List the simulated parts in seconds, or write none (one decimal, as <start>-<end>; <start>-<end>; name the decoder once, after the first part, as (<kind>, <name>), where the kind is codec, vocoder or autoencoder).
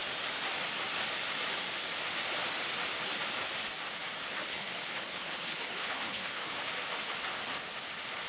4.3-6.5 (codec, HILCodec)